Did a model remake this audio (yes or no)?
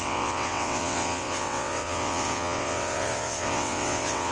yes